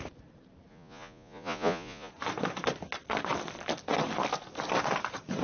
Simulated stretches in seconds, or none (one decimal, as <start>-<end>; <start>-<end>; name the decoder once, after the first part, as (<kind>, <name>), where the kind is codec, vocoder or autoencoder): 0.7-2.1 (vocoder, Vocos)